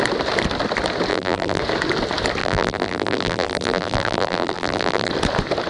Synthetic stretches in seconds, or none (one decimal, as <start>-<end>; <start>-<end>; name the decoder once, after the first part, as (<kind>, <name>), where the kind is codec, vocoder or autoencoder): 1.1-1.6 (vocoder, BigVGAN v2); 2.4-5.1